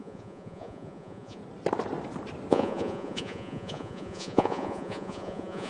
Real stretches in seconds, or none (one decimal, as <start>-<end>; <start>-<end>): 1.4-2.5